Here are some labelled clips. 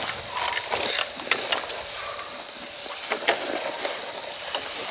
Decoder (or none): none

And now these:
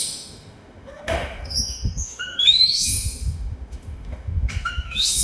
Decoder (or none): autoencoder, DAC-VAE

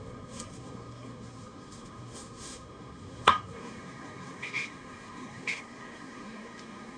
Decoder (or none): codec, SNAC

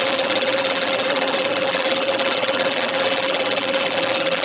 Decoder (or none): vocoder, BigVGAN v2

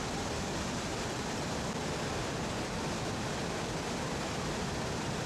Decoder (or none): vocoder, BigVGAN v2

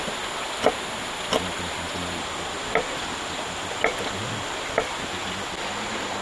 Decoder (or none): none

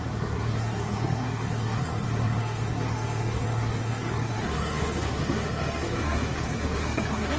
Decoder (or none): codec, SNAC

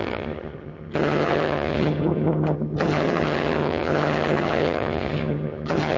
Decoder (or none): vocoder, HiFi-GAN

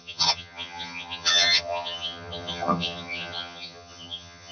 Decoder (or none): vocoder, HiFi-GAN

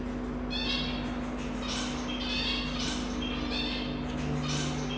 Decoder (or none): none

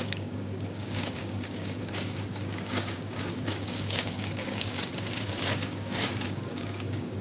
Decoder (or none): codec, DAC